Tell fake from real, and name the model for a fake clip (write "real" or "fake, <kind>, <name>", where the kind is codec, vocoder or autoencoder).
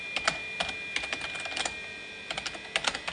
real